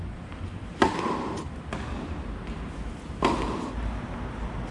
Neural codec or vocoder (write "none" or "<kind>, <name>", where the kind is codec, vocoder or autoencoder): none